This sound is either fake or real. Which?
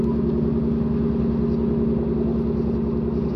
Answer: real